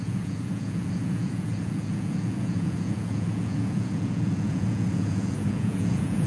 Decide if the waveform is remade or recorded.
remade